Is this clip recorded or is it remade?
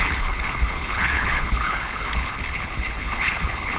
remade